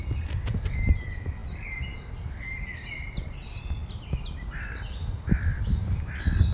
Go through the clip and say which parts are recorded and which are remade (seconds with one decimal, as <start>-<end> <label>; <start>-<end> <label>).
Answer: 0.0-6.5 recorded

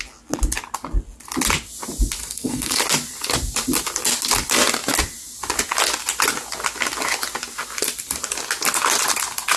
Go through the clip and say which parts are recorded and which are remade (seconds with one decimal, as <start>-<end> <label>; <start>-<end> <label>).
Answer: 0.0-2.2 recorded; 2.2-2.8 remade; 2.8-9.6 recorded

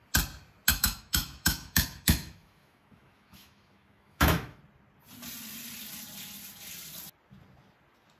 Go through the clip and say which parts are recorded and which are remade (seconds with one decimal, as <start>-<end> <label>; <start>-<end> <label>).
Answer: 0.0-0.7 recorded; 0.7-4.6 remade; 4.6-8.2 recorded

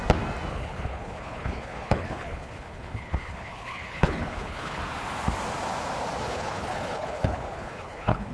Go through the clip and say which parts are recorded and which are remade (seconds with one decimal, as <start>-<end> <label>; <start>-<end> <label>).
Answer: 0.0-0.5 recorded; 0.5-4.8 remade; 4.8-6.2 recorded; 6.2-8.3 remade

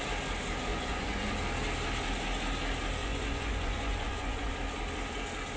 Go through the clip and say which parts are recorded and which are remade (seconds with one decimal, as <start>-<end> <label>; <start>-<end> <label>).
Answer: 0.0-0.7 recorded; 0.7-1.3 remade; 1.3-3.0 recorded; 3.0-4.5 remade; 4.5-5.6 recorded

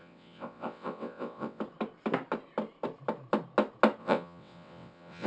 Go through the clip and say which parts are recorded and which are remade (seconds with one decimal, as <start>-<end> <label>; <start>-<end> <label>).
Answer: 0.0-1.6 remade; 1.6-4.0 recorded; 4.0-5.3 remade

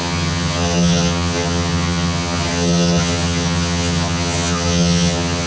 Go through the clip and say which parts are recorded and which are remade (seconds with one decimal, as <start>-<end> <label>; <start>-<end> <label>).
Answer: 0.0-5.5 remade

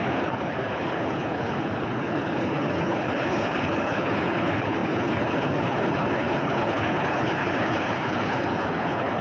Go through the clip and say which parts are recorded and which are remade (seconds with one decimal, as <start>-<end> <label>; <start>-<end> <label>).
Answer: 0.0-9.2 remade